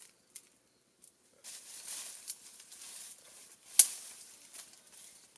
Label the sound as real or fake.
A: real